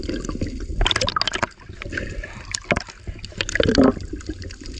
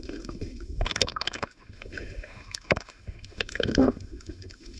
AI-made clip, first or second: second